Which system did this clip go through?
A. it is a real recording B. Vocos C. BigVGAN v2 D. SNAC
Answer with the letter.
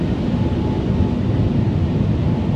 A